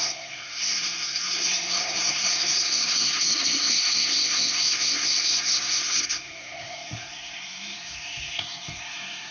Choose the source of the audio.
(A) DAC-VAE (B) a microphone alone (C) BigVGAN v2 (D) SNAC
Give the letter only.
D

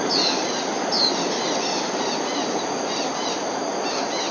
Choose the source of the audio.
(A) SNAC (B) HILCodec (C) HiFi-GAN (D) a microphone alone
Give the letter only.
D